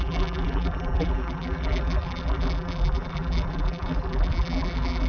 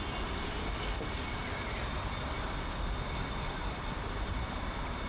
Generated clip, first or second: first